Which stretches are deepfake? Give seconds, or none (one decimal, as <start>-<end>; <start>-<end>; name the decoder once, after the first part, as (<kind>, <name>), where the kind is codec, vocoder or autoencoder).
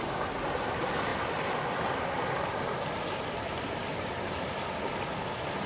none